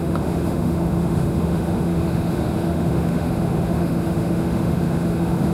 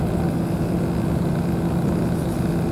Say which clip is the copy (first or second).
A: first